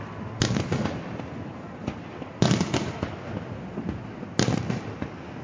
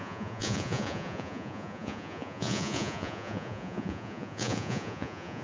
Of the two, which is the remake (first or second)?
second